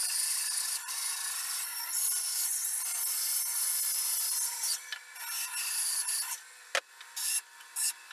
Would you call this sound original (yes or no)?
yes